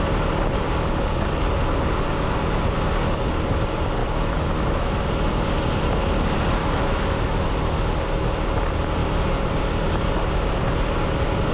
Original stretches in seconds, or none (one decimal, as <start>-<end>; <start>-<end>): 0.0-4.0; 5.1-6.6; 7.5-11.5

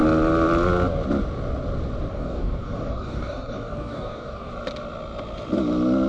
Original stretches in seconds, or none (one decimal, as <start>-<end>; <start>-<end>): 0.0-2.1; 4.5-6.1